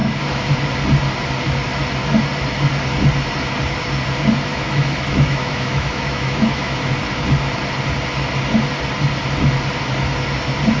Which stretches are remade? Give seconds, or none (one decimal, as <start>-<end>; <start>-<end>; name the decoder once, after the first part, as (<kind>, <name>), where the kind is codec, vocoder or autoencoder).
0.0-0.5 (autoencoder, DAC-VAE); 4.5-6.9